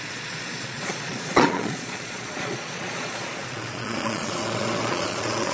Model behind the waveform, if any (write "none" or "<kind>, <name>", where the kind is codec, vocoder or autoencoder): vocoder, Vocos